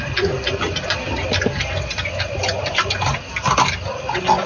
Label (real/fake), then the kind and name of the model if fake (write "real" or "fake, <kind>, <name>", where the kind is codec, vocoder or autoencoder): real